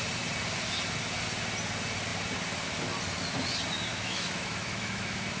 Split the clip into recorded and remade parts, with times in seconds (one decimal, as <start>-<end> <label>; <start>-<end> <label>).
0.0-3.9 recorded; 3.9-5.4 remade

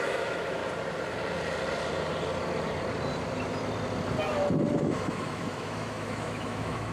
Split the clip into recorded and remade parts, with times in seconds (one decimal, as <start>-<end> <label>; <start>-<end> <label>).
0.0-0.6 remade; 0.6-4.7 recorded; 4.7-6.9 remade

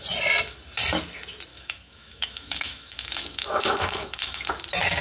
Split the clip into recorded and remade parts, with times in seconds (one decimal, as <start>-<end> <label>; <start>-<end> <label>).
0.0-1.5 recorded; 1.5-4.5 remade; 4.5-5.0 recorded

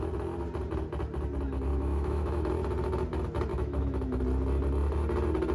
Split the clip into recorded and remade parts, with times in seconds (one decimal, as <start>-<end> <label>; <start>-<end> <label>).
0.0-1.7 recorded; 1.7-2.5 remade; 2.5-3.5 recorded; 3.5-4.2 remade; 4.2-5.5 recorded

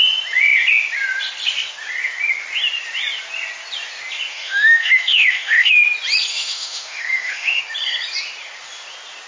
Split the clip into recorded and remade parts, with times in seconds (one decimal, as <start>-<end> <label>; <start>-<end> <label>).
0.0-4.3 recorded; 4.3-5.8 remade; 5.8-6.3 recorded; 6.3-7.6 remade; 7.6-9.3 recorded